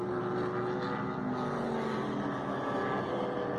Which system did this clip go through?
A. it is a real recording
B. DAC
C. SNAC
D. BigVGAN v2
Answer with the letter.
A